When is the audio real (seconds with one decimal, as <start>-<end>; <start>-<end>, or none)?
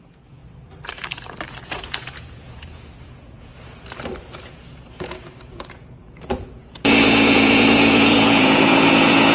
0.4-1.6; 3.5-4.2